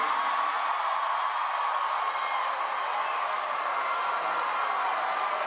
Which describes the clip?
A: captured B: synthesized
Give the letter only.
A